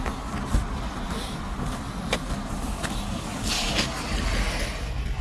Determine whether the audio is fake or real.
real